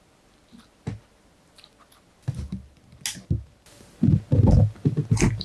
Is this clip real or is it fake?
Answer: real